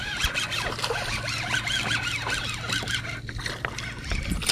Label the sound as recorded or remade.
recorded